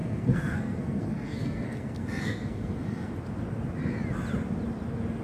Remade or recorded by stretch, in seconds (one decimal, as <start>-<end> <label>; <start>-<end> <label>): 0.0-3.1 remade; 3.1-5.2 recorded